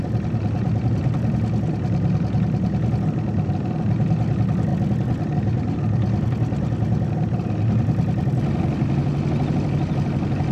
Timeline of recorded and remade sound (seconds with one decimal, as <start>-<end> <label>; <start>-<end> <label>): 0.0-10.5 recorded